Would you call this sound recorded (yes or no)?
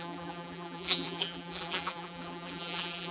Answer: no